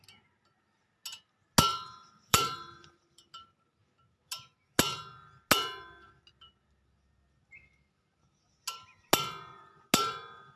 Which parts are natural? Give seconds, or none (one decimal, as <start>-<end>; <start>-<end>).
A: 0.0-1.7; 3.3-10.6